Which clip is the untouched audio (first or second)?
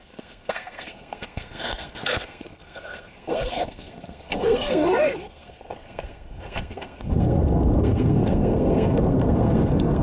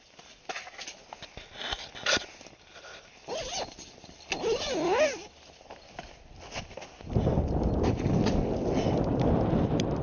second